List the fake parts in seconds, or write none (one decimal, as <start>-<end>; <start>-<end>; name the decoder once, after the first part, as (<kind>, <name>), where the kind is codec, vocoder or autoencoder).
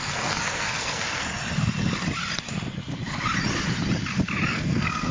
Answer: 0.0-1.4 (codec, SNAC); 4.5-5.1